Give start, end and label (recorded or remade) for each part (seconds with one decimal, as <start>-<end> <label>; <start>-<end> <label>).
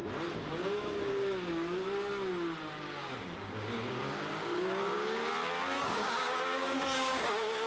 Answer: 0.0-0.5 recorded; 0.5-1.8 remade; 1.8-2.7 recorded; 2.7-5.2 remade; 5.2-5.8 recorded; 5.8-7.7 remade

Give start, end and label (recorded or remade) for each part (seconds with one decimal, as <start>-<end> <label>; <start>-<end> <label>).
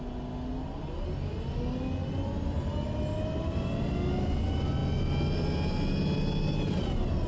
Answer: 0.0-7.3 recorded